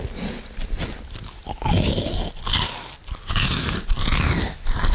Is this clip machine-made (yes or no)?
no